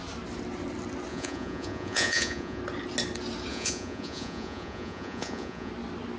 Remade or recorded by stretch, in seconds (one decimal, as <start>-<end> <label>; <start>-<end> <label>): 0.0-1.1 recorded; 1.1-2.6 remade; 2.6-3.5 recorded; 3.5-5.7 remade; 5.7-6.2 recorded

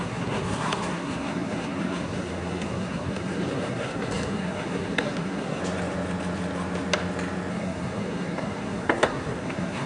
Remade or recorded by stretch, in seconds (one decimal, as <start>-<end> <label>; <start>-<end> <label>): 0.0-5.6 remade; 5.6-7.5 recorded; 7.5-9.9 remade

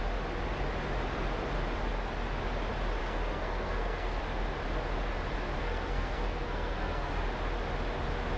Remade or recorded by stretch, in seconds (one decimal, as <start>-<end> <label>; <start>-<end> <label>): 0.0-3.0 recorded; 3.0-4.2 remade; 4.2-5.6 recorded; 5.6-7.1 remade; 7.1-8.4 recorded

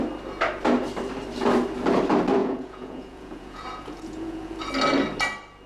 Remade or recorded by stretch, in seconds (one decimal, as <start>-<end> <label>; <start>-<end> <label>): 0.0-2.4 recorded; 2.4-4.5 remade; 4.5-5.7 recorded

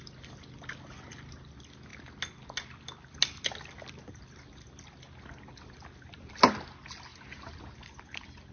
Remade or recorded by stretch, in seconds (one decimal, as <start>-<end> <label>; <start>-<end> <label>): 0.0-8.5 recorded

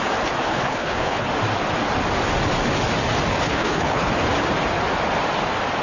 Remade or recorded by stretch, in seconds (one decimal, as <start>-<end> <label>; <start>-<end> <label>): 0.0-0.5 recorded; 0.5-1.3 remade; 1.3-3.3 recorded; 3.3-4.1 remade; 4.1-5.8 recorded

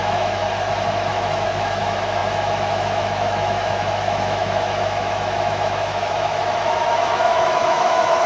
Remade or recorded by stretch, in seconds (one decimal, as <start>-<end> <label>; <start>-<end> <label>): 0.0-0.4 remade; 0.4-1.1 recorded; 1.1-8.3 remade